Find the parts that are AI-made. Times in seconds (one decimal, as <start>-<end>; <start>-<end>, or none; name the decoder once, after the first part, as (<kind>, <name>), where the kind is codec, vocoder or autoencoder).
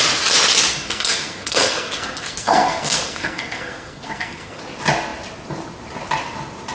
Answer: 0.7-4.6 (codec, SNAC)